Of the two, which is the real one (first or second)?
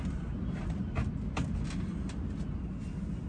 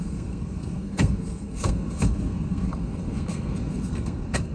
first